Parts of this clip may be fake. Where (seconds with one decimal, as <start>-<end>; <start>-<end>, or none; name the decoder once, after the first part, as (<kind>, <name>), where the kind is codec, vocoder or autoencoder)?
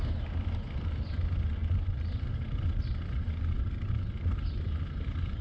none